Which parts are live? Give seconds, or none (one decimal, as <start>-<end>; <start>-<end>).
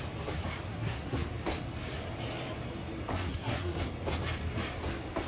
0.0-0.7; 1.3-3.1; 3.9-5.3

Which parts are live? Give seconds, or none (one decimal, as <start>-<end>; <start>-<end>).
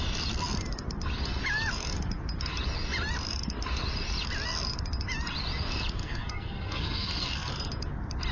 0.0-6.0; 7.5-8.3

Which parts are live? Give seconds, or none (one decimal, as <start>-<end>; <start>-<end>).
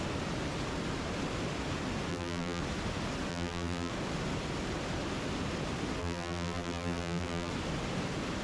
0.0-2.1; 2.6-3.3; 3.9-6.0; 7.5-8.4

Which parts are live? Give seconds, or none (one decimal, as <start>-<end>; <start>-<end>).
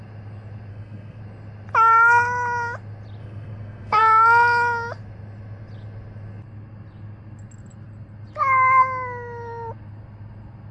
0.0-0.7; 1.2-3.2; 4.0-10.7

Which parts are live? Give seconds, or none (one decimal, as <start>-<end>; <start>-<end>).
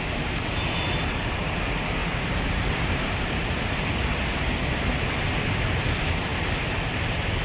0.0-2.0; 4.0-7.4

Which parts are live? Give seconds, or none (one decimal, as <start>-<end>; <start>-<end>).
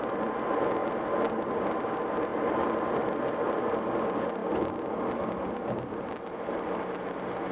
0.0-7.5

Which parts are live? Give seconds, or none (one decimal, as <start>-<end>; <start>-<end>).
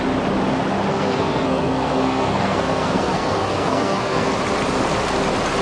0.0-0.9; 4.3-5.6